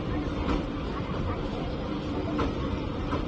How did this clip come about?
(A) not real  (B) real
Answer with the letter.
A